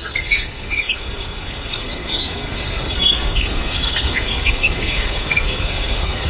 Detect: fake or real fake